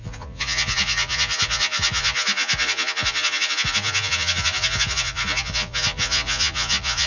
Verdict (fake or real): fake